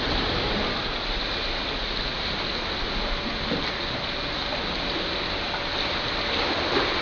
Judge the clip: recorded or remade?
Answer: recorded